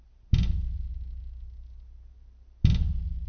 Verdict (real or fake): real